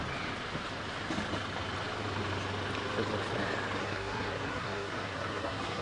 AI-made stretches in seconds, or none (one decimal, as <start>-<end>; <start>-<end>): 3.8-5.8